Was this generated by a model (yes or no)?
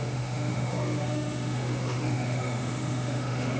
yes